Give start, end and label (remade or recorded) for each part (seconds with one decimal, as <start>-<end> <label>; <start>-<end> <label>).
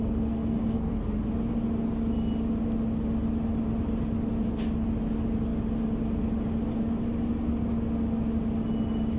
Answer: 0.0-0.9 remade; 0.9-9.2 recorded